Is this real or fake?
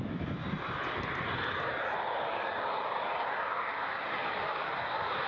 real